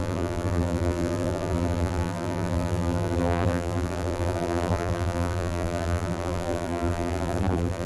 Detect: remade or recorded remade